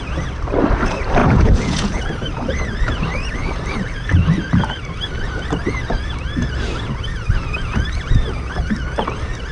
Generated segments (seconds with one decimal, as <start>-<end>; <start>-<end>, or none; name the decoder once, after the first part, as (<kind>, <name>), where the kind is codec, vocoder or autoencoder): 1.2-2.0 (vocoder, Vocos)